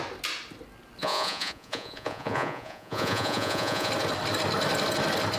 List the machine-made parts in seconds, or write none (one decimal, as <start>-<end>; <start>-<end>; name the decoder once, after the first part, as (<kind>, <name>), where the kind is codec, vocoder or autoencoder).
1.0-3.9 (vocoder, Vocos)